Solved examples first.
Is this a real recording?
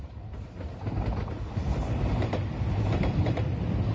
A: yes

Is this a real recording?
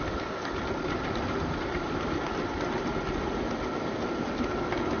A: yes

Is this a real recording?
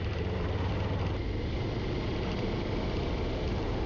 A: yes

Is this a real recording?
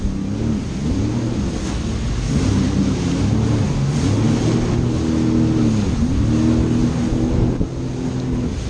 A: yes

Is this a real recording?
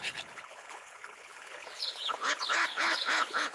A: no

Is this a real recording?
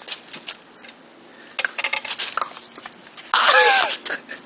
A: yes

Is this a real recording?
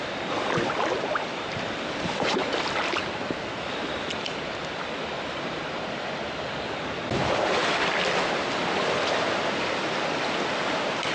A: yes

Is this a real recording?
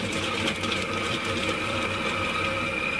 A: no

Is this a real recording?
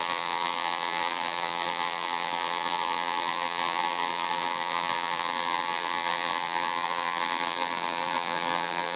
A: no